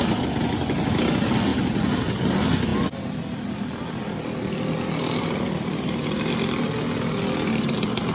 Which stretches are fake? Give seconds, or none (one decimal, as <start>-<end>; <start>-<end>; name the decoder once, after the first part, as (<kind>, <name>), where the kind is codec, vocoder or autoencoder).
none